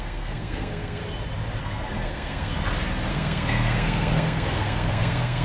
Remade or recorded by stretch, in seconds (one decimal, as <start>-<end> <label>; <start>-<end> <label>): 0.0-1.0 remade; 1.0-1.6 recorded; 1.6-2.5 remade; 2.5-3.1 recorded; 3.1-5.4 remade